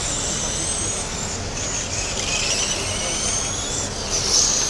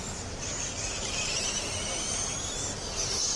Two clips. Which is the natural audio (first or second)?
first